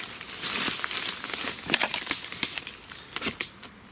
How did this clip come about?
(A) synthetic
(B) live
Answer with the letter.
B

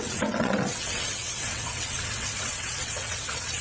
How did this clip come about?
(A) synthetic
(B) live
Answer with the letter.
A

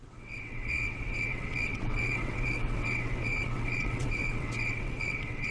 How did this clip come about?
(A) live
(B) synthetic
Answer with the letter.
B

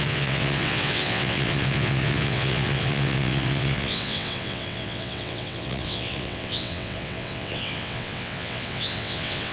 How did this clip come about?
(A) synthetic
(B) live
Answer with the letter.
A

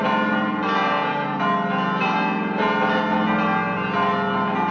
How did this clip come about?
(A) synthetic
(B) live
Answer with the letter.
B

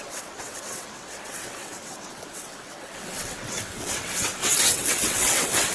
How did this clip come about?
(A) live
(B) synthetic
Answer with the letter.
B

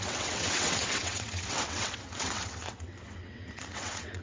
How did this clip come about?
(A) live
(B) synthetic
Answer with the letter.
B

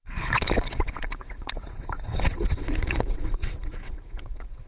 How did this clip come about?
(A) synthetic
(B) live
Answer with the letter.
A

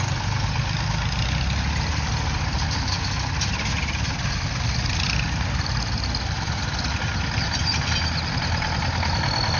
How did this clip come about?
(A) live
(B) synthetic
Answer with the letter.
A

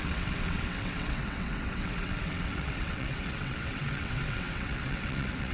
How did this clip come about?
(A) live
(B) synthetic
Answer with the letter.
B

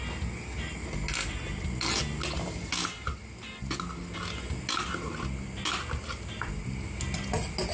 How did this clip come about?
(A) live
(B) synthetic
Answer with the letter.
A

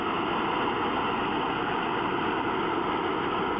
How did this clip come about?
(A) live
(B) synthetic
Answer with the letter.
A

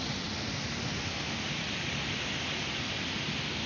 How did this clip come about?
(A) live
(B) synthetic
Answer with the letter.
A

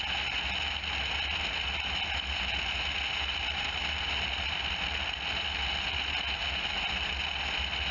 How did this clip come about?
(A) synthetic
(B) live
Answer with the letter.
B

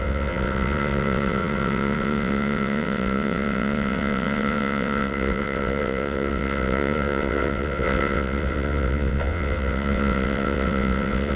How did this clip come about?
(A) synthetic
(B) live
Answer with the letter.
A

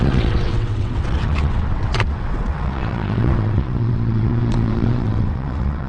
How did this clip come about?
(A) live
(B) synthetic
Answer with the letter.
B